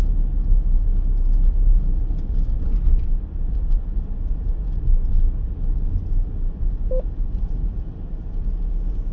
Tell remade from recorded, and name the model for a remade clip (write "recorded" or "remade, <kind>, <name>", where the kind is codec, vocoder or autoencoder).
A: recorded